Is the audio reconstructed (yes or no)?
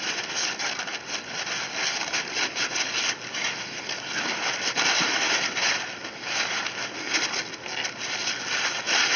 no